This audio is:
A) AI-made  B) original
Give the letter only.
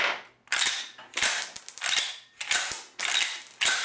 B